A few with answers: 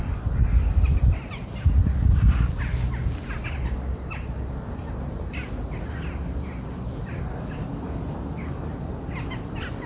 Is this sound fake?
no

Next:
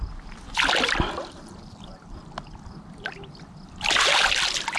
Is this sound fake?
no